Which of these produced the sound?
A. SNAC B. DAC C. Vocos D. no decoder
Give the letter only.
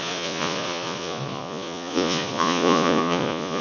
C